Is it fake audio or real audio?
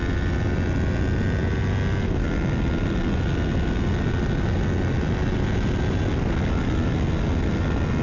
real